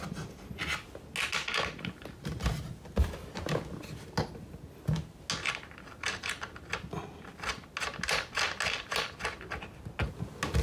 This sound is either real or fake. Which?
real